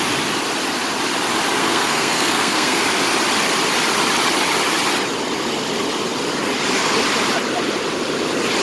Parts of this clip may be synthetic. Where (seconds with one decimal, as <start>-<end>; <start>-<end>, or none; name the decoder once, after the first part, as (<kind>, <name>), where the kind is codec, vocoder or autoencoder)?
1.6-2.8 (codec, SNAC)